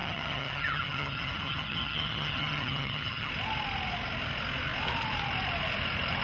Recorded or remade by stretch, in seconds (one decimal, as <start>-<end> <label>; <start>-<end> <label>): 0.0-3.3 remade; 3.3-6.2 recorded